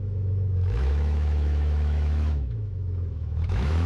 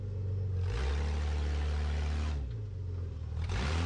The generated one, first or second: first